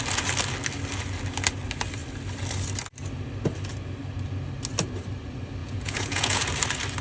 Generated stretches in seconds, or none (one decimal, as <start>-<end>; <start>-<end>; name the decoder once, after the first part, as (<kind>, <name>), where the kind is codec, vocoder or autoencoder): 5.6-6.5 (vocoder, Vocos)